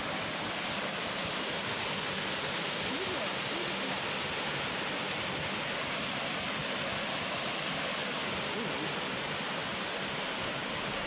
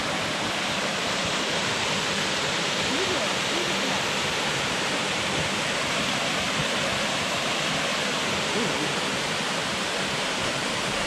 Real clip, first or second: first